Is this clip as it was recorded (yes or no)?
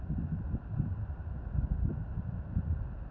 yes